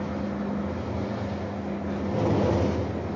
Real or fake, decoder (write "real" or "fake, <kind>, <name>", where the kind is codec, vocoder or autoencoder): real